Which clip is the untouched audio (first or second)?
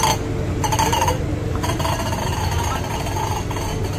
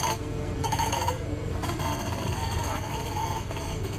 first